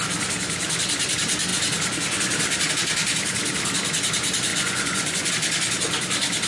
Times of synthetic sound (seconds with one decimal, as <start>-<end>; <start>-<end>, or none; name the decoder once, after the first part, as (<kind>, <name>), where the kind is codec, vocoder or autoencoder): 4.5-5.3 (vocoder, Vocos)